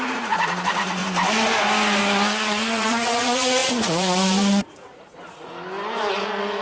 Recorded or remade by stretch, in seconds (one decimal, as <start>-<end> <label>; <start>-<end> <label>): 0.0-1.0 remade; 1.0-2.0 recorded; 2.0-5.5 remade; 5.5-6.1 recorded; 6.1-6.6 remade